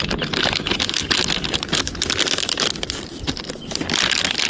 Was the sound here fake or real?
real